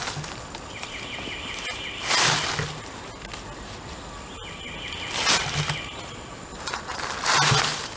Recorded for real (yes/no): yes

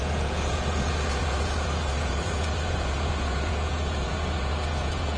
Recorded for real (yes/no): no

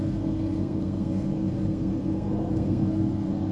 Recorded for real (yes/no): no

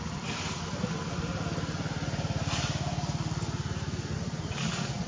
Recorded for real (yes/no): yes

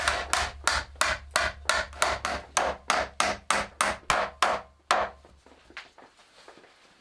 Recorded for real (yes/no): yes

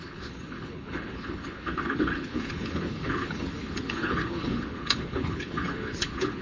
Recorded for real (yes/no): no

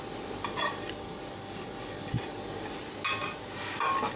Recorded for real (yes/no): yes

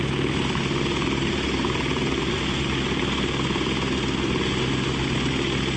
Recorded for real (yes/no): yes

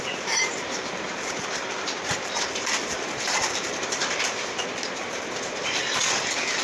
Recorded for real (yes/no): no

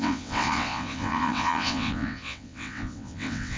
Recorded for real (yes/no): no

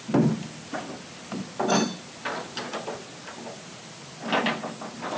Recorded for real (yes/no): yes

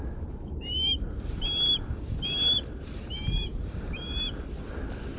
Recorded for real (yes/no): no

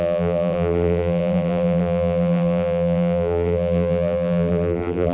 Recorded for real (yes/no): no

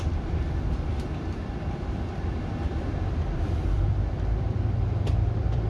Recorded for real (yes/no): no